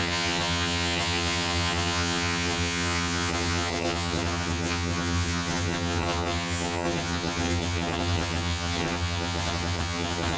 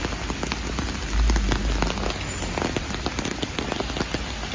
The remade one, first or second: first